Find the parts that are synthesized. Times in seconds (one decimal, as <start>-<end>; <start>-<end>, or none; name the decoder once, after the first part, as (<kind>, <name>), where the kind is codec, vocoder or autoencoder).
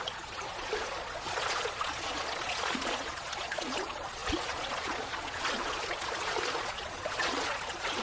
0.0-8.0 (vocoder, Vocos)